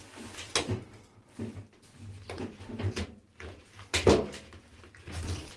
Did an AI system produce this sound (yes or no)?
no